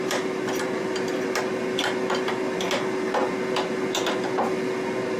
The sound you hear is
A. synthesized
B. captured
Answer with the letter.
B